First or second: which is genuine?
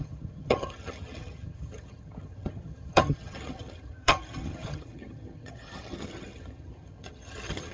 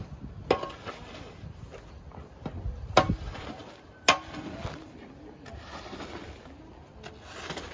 second